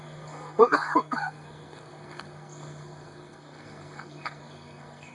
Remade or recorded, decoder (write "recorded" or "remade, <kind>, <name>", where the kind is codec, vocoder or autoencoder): remade, codec, SNAC